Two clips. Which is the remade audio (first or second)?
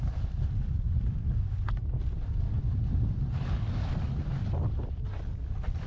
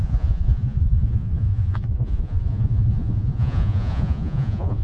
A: second